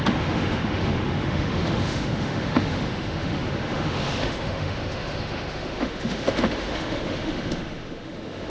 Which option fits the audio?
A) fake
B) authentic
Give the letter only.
A